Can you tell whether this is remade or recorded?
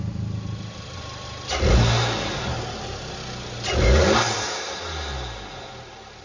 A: recorded